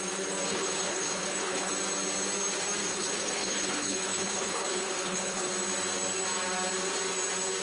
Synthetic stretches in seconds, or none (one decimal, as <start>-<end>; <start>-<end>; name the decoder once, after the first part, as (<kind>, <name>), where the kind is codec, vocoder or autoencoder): 0.5-1.7 (codec, HILCodec); 2.9-5.5